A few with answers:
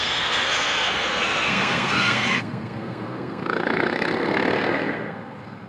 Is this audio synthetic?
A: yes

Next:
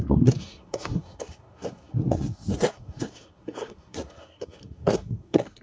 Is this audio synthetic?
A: yes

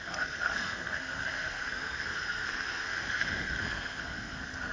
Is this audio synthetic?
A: yes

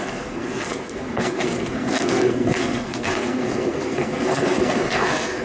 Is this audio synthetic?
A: yes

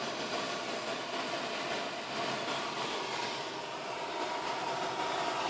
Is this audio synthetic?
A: no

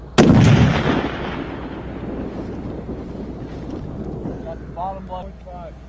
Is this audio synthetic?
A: no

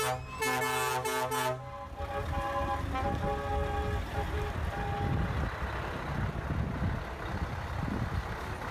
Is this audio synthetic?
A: no